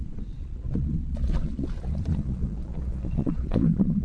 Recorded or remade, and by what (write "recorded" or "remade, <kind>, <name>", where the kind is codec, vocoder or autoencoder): remade, vocoder, Vocos